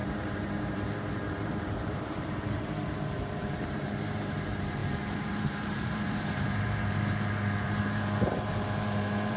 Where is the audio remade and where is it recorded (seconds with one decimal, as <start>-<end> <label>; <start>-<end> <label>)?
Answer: 0.0-9.4 remade